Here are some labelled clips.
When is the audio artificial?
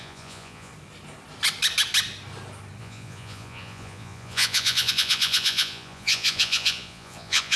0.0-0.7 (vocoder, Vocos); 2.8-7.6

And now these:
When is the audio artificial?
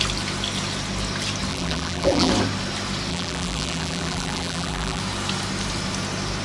1.5-2.3 (vocoder, BigVGAN v2); 3.1-5.0